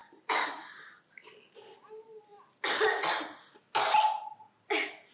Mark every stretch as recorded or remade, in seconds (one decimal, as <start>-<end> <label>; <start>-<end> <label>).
0.0-5.1 recorded